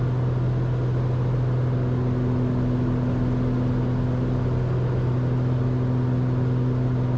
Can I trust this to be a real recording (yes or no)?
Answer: yes